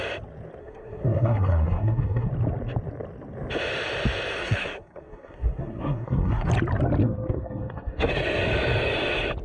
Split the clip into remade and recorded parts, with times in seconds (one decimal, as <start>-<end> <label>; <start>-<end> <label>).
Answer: 0.0-0.6 recorded; 0.6-2.3 remade; 2.3-4.4 recorded; 4.4-6.5 remade; 6.5-7.0 recorded; 7.0-8.1 remade; 8.1-9.4 recorded